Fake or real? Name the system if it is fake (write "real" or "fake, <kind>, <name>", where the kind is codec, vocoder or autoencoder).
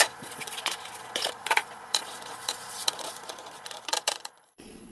fake, vocoder, Vocos